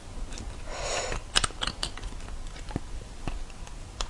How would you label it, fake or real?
real